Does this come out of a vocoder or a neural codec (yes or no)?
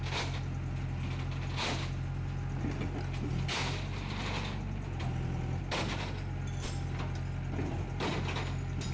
no